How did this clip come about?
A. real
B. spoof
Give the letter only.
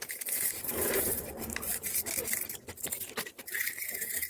B